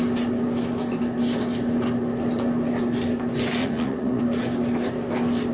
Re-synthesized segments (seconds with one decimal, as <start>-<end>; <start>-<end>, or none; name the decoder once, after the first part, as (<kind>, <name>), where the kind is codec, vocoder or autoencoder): 3.6-4.2 (vocoder, Vocos)